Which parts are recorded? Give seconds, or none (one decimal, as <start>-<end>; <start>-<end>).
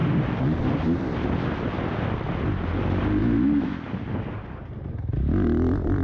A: 0.0-3.2; 3.9-6.0